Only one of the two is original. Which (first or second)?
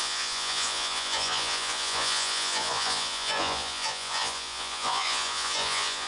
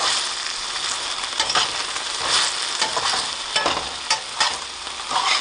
second